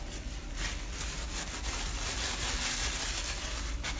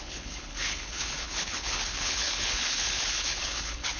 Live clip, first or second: first